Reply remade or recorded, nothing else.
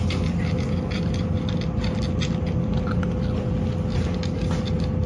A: recorded